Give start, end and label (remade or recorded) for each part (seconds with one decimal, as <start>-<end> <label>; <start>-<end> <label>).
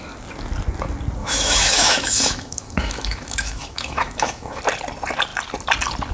0.0-1.2 recorded; 1.2-4.6 remade; 4.6-6.1 recorded